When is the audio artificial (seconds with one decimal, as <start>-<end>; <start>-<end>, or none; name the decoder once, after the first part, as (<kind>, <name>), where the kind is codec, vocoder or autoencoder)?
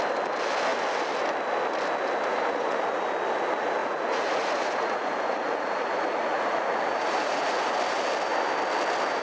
2.3-3.0 (vocoder, Vocos); 3.8-7.8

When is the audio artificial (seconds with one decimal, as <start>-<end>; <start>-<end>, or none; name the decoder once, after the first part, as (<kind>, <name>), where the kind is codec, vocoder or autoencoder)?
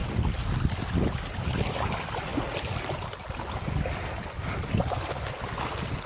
none